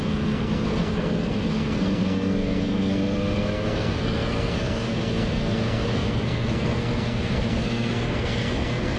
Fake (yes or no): yes